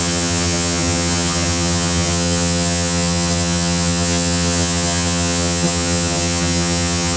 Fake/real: fake